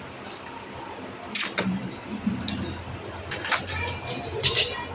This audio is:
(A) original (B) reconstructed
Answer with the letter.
A